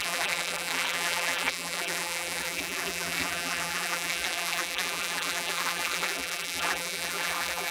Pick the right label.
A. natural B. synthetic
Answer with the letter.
B